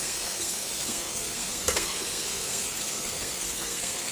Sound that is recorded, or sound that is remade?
remade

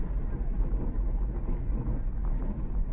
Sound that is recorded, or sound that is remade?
recorded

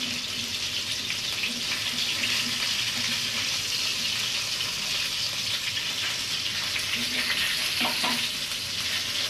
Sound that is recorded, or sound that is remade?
recorded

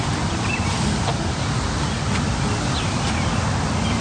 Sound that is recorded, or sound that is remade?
recorded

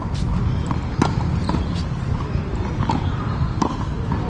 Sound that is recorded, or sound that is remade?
recorded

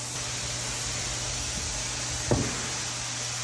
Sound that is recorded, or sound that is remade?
recorded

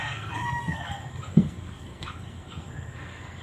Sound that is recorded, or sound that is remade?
remade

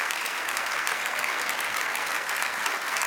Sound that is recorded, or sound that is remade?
remade